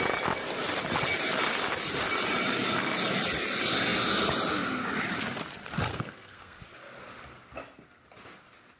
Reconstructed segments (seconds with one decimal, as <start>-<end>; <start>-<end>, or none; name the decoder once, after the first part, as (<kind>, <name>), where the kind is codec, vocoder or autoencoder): 5.9-6.6 (codec, SNAC)